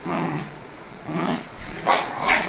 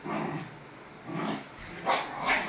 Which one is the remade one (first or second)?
first